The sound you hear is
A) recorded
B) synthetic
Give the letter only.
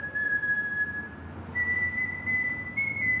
A